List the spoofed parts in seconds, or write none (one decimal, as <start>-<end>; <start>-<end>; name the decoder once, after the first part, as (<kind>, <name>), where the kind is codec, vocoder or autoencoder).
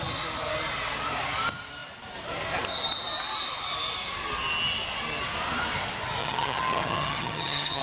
6.2-7.8 (vocoder, HiFi-GAN)